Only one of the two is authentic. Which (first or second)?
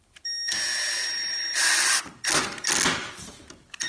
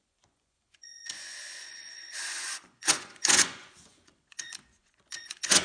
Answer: first